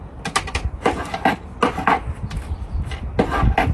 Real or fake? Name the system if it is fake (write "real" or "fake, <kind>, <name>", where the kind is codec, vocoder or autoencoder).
real